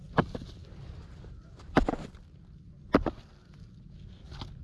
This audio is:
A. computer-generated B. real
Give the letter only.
B